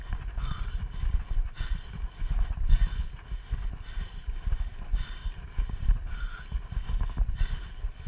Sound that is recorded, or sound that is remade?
recorded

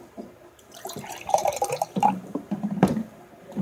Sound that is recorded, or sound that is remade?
remade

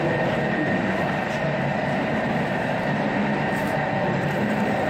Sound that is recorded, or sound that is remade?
remade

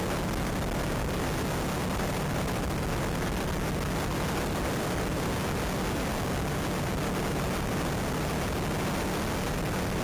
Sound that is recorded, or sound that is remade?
recorded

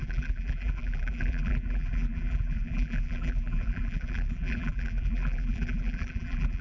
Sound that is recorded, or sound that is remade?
remade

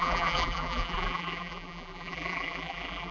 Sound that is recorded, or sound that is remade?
remade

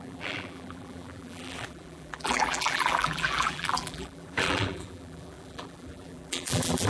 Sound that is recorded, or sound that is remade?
remade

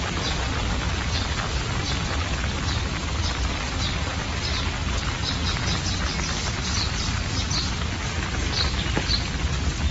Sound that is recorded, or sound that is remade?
recorded